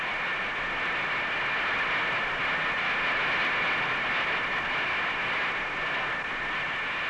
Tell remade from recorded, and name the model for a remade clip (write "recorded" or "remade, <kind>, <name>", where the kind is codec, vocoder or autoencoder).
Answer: recorded